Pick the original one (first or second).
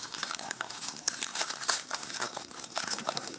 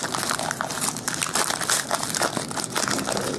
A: second